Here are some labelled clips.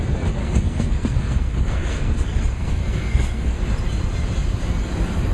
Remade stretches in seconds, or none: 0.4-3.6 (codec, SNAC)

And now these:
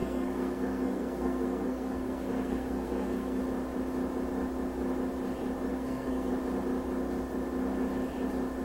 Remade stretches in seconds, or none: 0.0-3.4 (codec, SNAC); 5.7-6.3

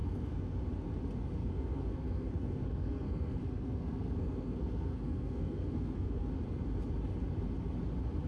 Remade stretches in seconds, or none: 0.0-0.6 (codec, SNAC); 1.4-6.3

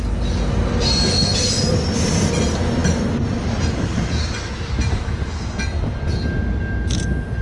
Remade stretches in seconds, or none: none

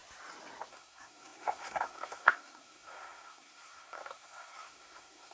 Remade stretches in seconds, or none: 0.7-5.3 (codec, SNAC)

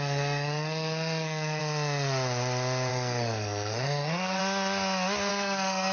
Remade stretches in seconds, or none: 0.0-1.6 (codec, SNAC); 2.9-4.4; 5.3-5.9

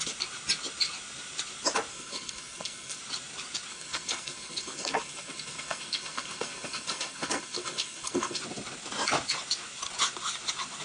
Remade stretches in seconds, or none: 1.9-3.0 (codec, SNAC); 3.7-8.4

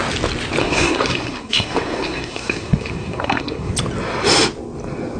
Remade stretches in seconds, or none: 0.6-3.7 (codec, SNAC)